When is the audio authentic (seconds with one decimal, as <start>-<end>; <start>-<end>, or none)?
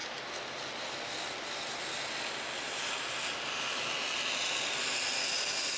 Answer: 0.0-5.8